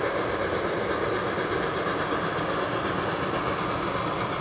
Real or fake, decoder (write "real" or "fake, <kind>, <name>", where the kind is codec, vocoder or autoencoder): real